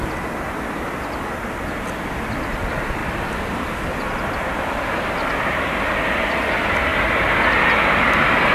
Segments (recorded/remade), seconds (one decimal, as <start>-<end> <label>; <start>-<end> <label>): 0.0-8.5 recorded